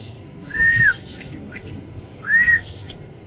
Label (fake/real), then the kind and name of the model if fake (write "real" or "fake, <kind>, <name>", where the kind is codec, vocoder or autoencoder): fake, codec, SNAC